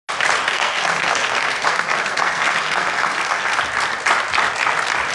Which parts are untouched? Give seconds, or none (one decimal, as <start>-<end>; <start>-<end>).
0.0-0.5; 3.6-5.1